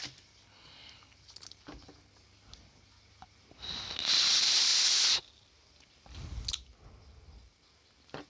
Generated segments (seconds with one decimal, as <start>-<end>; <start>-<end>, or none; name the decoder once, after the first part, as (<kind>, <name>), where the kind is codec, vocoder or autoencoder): none

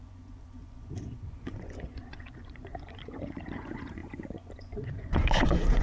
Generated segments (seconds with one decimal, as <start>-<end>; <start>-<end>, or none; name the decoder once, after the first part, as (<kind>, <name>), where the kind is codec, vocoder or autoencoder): 0.0-5.8 (vocoder, Vocos)

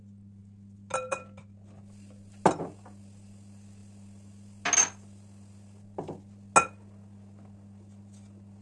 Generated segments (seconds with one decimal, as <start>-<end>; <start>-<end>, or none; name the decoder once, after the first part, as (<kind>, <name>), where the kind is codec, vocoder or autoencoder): none

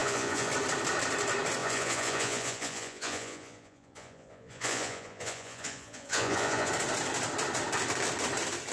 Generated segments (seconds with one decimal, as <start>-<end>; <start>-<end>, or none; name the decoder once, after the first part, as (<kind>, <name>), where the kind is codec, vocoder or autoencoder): 0.0-0.5 (vocoder, Vocos); 1.6-6.7